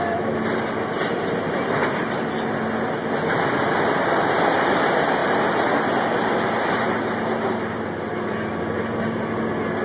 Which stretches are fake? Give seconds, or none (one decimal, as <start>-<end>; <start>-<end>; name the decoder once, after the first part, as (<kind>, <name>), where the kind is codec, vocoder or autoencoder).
none

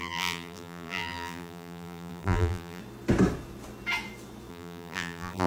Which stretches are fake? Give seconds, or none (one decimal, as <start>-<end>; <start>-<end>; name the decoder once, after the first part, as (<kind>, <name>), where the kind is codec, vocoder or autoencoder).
0.0-2.8 (vocoder, BigVGAN v2); 4.5-5.5

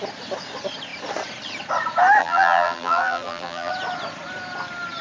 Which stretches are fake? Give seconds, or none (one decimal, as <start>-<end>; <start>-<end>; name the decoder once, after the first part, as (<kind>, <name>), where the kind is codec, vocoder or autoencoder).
2.2-3.7 (vocoder, BigVGAN v2)

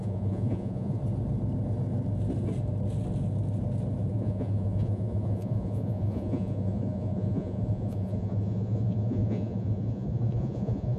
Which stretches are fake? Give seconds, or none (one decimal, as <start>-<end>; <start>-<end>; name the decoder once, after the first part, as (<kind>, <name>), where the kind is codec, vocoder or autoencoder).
0.0-1.0 (vocoder, Vocos); 4.1-11.0

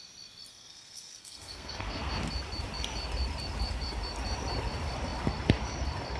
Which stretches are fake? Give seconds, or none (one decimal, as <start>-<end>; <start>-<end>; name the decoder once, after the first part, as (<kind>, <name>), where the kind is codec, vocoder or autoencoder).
0.5-2.1 (codec, SNAC)

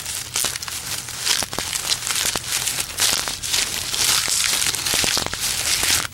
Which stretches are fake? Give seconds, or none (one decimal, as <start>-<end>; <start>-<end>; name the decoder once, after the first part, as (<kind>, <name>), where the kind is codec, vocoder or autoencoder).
none

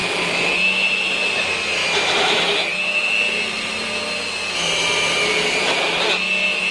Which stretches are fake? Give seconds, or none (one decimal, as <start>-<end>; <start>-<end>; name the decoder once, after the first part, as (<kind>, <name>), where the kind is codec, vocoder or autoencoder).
none

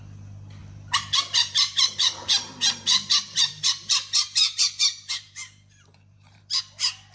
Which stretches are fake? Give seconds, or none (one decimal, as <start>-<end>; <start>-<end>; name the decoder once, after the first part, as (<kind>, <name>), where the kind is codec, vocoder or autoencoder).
0.6-3.7 (vocoder, BigVGAN v2); 4.4-6.6